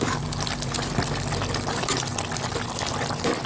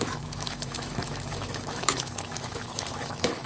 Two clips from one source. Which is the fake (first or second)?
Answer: second